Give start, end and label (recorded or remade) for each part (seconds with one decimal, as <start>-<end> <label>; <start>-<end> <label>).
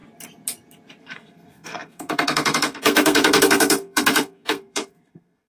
0.0-1.0 recorded; 1.0-5.5 remade